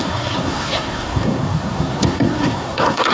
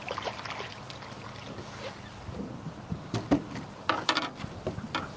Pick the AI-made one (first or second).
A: first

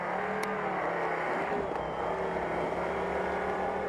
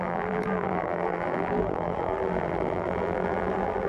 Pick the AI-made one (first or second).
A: second